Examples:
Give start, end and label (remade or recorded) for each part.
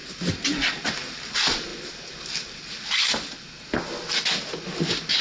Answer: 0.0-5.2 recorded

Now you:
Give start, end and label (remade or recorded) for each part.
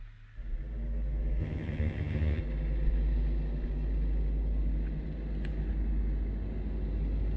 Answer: 0.0-1.4 recorded; 1.4-2.4 remade; 2.4-7.4 recorded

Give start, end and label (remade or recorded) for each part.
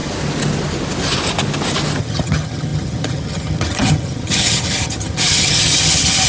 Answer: 0.0-2.0 recorded; 2.0-6.3 remade